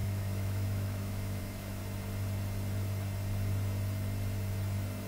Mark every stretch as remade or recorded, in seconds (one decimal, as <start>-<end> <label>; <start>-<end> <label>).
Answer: 0.0-1.8 remade; 1.8-5.1 recorded